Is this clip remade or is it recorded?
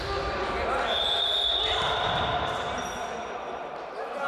recorded